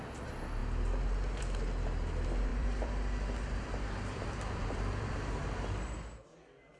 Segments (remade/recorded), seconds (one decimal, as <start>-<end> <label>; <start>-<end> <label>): 0.0-2.5 recorded; 2.5-5.1 remade; 5.1-6.8 recorded